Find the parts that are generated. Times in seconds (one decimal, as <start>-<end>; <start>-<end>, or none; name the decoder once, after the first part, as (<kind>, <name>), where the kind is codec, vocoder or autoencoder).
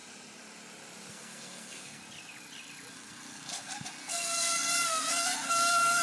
1.1-2.0 (codec, SNAC); 2.9-6.0